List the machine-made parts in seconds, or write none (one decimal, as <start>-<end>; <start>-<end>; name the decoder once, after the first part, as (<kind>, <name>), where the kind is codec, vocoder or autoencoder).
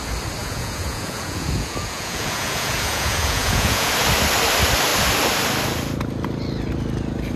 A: 0.4-3.9 (vocoder, Vocos)